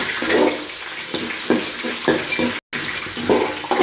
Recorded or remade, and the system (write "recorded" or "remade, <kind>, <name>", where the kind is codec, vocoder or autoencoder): recorded